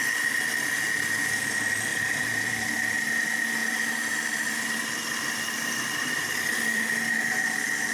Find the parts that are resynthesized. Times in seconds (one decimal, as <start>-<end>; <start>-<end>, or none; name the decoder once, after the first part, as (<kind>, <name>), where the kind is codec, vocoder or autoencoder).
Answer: 3.6-7.1 (vocoder, BigVGAN v2)